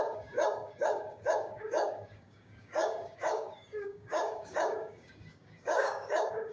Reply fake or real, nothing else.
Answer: fake